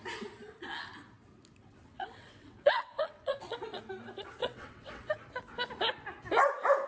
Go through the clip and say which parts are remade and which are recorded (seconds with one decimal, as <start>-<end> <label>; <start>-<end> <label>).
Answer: 0.0-1.6 recorded; 1.6-3.8 remade; 3.8-4.4 recorded; 4.4-5.1 remade; 5.1-6.9 recorded